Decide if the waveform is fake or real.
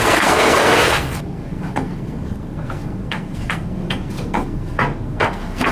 fake